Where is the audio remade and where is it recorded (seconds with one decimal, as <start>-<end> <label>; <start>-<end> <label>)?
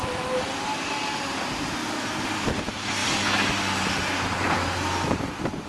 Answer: 0.0-1.8 remade; 1.8-2.6 recorded; 2.6-5.7 remade